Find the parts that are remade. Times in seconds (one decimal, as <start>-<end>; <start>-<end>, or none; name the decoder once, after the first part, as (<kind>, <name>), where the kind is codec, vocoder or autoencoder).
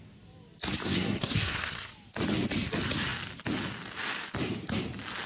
0.8-1.9 (codec, SNAC)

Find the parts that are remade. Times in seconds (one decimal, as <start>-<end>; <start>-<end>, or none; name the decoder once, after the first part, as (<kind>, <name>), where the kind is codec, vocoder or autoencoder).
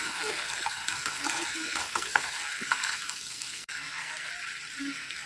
0.0-4.3 (codec, SNAC); 4.8-5.3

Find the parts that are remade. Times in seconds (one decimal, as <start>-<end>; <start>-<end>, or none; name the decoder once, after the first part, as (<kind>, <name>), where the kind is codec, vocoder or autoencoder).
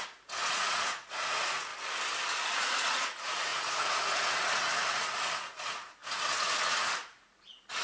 0.0-1.7 (vocoder, Vocos); 2.5-7.8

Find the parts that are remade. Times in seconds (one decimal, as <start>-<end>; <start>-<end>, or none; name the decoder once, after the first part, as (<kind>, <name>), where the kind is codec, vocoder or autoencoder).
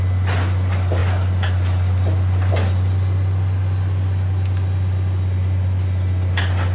none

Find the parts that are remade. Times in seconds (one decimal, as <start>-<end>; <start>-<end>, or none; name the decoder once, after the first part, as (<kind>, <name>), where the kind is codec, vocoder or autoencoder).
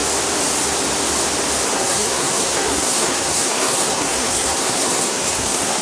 1.7-5.8 (codec, SNAC)